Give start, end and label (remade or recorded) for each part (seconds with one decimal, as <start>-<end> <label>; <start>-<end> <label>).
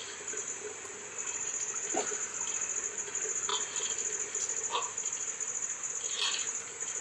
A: 0.0-7.0 recorded